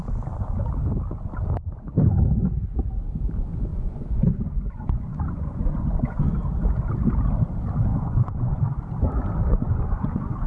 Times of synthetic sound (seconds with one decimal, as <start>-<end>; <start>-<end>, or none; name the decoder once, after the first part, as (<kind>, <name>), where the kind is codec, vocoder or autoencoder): 3.7-6.3 (vocoder, Vocos); 7.9-8.6; 9.5-10.5